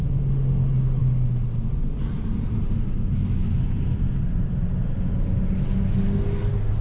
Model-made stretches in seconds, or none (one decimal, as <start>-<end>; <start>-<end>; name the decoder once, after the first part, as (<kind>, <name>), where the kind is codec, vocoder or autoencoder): none